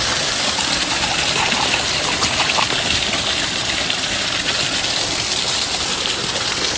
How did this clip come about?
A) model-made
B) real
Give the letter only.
B